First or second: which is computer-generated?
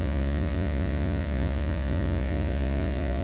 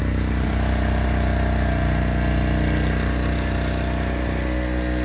first